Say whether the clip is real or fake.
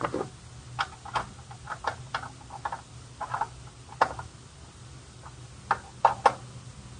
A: real